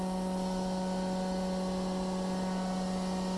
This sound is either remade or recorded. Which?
recorded